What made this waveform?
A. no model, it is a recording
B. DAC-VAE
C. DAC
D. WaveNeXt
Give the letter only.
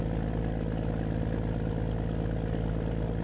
A